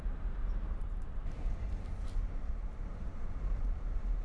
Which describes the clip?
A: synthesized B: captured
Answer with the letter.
A